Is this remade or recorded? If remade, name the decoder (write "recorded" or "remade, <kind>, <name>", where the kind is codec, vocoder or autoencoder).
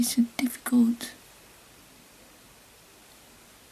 recorded